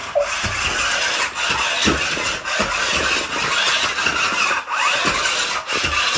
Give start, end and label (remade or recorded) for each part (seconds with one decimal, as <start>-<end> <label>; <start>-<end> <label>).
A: 0.0-6.2 recorded